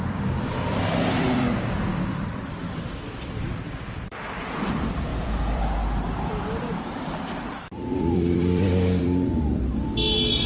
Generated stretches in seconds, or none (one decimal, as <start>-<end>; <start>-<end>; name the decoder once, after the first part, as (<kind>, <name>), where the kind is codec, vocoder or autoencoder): 0.0-2.3 (vocoder, BigVGAN v2); 3.8-10.5